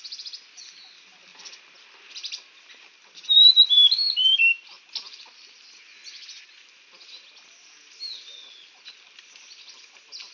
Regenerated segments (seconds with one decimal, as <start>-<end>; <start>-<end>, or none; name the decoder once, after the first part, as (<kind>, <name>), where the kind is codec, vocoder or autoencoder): none